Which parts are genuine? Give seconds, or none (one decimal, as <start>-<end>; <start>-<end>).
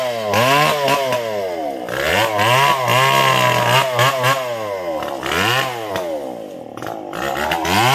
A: 0.0-7.9